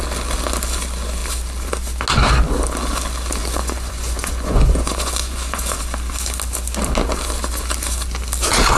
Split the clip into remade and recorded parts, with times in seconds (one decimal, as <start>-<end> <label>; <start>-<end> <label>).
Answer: 0.0-3.4 recorded; 3.4-5.8 remade; 5.8-8.8 recorded